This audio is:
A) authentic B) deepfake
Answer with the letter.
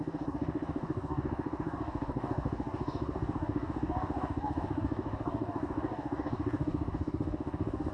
B